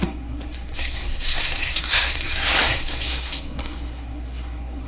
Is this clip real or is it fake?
fake